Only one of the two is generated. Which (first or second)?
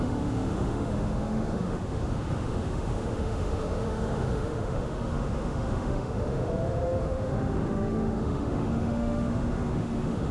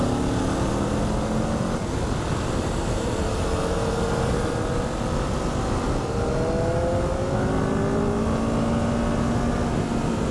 first